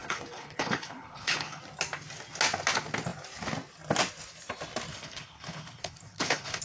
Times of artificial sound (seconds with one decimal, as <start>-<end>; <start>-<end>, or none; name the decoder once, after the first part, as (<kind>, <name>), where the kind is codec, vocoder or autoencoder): 0.0-1.6 (codec, HILCodec); 4.9-6.6